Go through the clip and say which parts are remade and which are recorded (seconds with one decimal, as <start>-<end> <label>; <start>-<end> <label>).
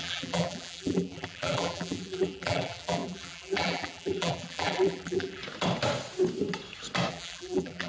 0.0-5.4 remade; 5.4-7.1 recorded; 7.1-7.9 remade